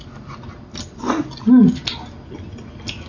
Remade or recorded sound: recorded